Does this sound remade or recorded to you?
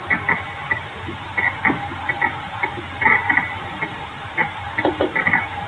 recorded